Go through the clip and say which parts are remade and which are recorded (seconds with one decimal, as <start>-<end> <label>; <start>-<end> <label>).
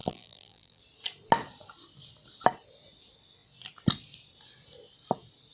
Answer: 0.0-0.8 remade; 0.8-5.5 recorded